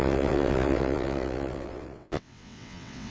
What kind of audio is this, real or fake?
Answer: fake